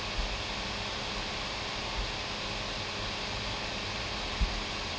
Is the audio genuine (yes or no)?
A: yes